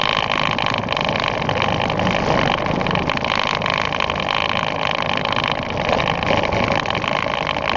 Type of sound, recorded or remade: recorded